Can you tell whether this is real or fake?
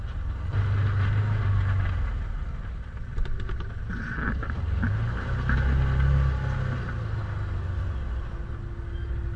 real